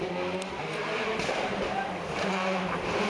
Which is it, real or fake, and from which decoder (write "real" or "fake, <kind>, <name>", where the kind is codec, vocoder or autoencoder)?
real